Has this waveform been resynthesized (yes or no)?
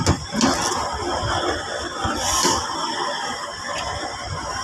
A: no